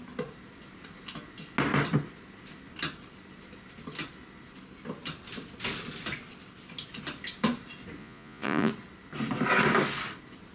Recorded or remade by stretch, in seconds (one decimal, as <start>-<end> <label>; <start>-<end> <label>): 0.0-8.0 recorded; 8.0-8.7 remade; 8.7-10.5 recorded